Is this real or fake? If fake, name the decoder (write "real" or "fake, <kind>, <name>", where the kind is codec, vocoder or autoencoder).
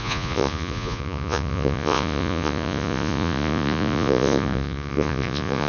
fake, vocoder, Vocos